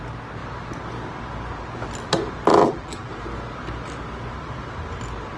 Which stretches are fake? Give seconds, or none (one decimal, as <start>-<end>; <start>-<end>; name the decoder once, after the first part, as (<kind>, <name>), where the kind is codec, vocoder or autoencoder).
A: 2.5-3.1 (vocoder, BigVGAN v2)